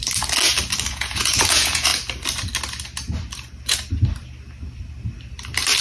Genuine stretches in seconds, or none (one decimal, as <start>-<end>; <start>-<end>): 0.0-0.9; 1.9-5.8